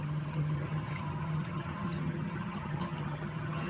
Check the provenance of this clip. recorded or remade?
remade